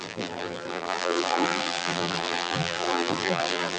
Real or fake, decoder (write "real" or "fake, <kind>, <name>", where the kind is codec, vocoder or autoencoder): fake, vocoder, BigVGAN v2